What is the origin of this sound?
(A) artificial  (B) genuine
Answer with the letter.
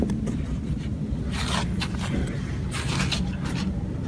B